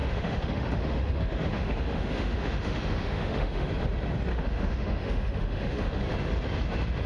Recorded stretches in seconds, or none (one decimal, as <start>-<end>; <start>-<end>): 3.7-4.3; 6.0-7.1

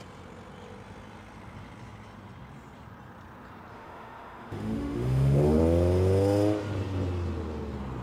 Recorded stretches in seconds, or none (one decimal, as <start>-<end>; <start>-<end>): 0.0-3.7; 5.6-8.0

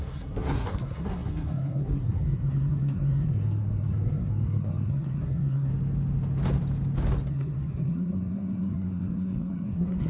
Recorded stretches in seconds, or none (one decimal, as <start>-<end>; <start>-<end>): 5.7-7.3